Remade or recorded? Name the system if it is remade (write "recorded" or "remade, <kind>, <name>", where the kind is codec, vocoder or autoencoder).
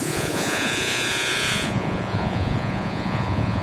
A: remade, vocoder, Vocos